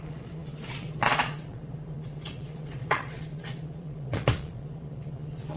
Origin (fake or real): fake